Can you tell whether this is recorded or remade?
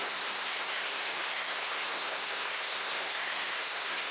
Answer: remade